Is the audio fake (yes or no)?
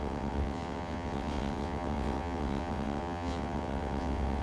yes